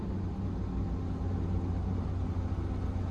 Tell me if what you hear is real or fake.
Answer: real